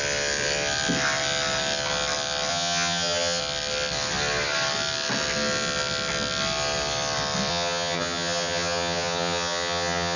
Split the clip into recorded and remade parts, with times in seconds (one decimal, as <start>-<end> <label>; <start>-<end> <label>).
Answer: 0.0-2.5 recorded; 2.5-3.4 remade; 3.4-7.5 recorded; 7.5-10.2 remade